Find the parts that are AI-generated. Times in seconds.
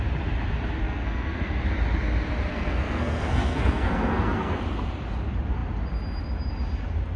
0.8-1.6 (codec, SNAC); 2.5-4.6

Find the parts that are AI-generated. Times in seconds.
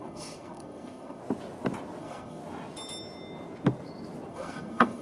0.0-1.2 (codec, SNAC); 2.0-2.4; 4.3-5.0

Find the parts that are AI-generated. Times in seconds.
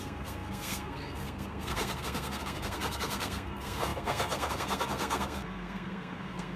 0.0-6.6 (codec, SNAC)